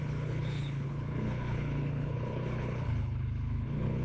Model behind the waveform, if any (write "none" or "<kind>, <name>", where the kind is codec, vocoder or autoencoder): codec, HILCodec